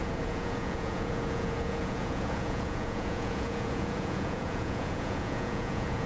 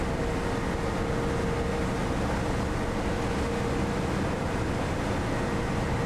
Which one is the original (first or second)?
second